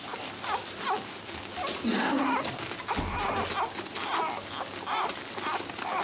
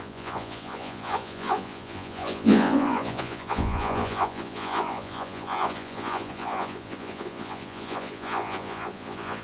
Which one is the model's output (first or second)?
second